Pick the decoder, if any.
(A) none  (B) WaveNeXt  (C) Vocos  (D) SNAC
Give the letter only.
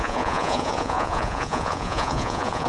C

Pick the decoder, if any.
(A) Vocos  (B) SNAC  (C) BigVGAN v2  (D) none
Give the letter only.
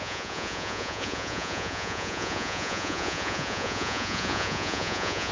A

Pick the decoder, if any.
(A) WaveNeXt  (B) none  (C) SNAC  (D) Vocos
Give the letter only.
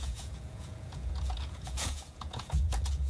D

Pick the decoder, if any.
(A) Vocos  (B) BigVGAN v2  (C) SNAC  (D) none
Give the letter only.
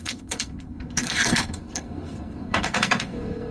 C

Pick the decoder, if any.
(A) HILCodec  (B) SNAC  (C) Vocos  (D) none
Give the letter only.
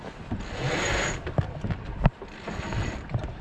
D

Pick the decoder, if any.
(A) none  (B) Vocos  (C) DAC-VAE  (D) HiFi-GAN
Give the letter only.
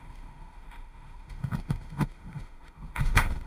C